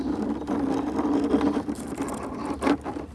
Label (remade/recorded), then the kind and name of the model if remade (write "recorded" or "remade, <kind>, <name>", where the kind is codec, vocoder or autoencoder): recorded